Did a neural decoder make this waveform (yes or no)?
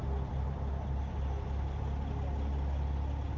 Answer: no